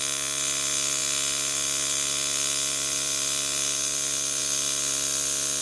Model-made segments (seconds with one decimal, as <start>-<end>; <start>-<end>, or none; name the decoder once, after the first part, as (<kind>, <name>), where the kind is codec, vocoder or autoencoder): none